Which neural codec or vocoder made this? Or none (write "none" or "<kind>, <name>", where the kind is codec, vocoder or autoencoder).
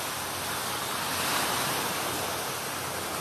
none